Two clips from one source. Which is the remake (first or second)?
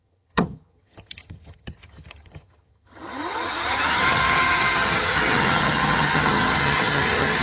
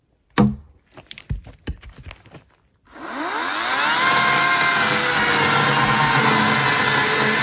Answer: first